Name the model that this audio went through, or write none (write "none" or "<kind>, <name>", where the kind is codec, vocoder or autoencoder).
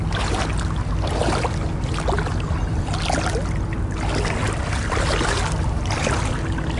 none